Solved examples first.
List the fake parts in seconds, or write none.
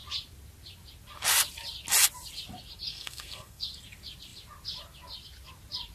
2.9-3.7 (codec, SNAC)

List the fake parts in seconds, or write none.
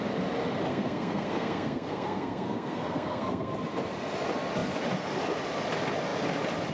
0.7-3.5 (codec, SNAC)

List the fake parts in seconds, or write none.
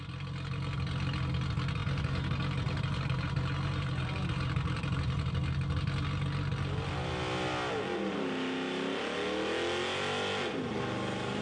1.8-5.3 (vocoder, BigVGAN v2)